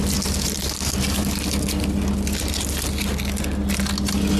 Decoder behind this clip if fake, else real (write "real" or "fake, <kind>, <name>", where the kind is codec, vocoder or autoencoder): real